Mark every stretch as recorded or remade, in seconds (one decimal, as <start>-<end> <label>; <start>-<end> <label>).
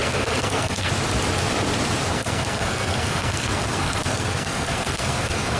0.0-0.9 remade; 0.9-2.1 recorded; 2.1-5.6 remade